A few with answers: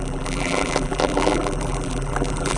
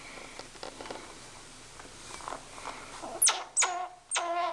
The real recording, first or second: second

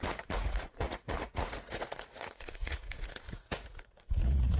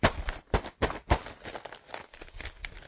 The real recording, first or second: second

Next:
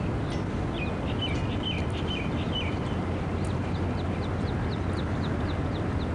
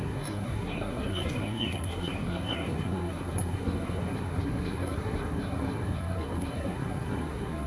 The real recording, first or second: first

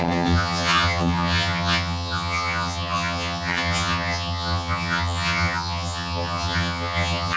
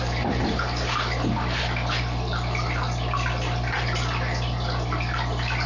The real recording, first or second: second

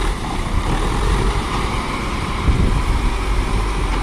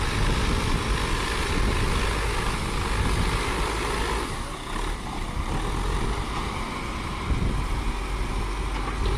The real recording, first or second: second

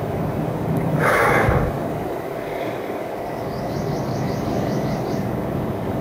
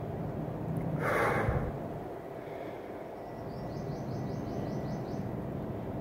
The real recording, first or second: second